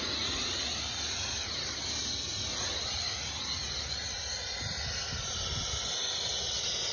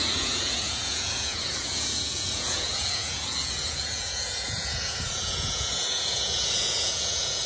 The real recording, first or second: first